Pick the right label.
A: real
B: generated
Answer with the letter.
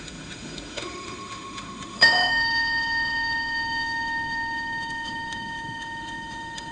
B